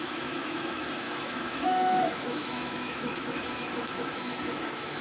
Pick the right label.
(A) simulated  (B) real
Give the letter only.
A